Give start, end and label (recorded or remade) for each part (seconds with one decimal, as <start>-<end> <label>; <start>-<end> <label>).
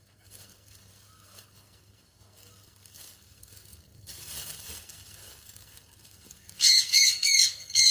0.0-7.9 remade